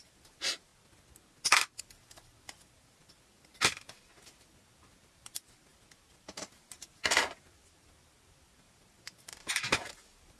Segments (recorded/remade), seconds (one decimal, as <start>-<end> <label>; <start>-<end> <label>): 0.0-0.7 remade; 0.7-1.8 recorded; 1.8-10.4 remade